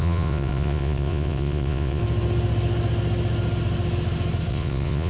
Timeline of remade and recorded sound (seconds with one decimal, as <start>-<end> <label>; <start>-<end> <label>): 0.0-2.0 remade; 2.0-4.5 recorded; 4.5-5.1 remade